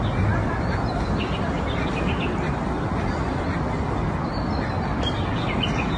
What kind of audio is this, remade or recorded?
recorded